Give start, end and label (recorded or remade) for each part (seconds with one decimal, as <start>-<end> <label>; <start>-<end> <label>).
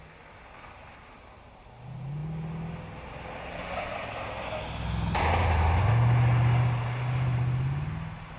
0.0-8.4 recorded